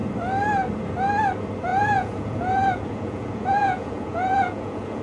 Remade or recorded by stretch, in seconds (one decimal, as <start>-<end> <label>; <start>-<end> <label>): 0.0-1.7 recorded; 1.7-5.0 remade

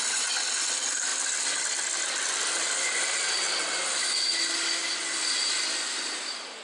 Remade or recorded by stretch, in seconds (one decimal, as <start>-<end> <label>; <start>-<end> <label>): 0.0-6.6 recorded

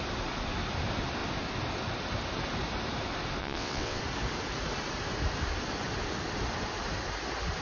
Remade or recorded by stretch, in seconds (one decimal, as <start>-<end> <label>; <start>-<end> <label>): 0.0-3.4 recorded; 3.4-4.0 remade; 4.0-7.6 recorded

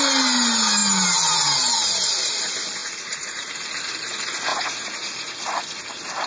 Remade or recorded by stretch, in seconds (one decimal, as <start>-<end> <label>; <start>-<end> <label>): 0.0-2.8 recorded; 2.8-3.5 remade; 3.5-4.5 recorded; 4.5-5.4 remade; 5.4-6.3 recorded

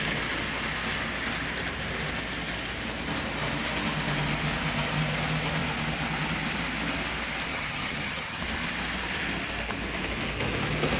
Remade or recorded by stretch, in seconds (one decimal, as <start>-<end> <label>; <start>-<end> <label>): 0.0-7.5 recorded; 7.5-8.4 remade; 8.4-11.0 recorded

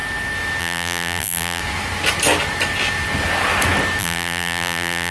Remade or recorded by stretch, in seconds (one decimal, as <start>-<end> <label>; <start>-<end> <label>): 0.0-0.6 recorded; 0.6-1.6 remade; 1.6-4.0 recorded; 4.0-5.1 remade